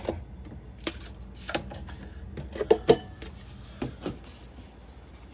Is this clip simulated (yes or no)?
no